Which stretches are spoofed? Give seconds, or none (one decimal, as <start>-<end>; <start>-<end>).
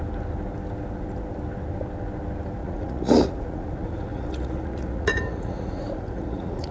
2.6-6.7